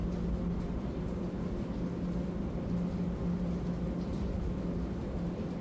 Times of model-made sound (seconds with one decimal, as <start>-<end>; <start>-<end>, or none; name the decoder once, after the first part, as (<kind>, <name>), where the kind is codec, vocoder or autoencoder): none